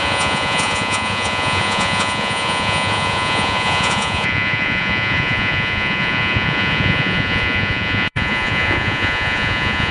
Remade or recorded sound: remade